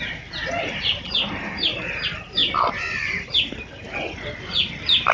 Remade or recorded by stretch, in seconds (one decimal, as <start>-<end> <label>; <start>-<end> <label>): 0.0-2.4 remade; 2.4-3.0 recorded; 3.0-3.7 remade; 3.7-4.4 recorded; 4.4-5.1 remade